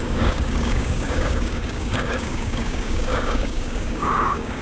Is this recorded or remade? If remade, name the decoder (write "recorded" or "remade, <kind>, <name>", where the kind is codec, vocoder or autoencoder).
remade, codec, DAC